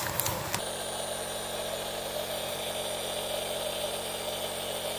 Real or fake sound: real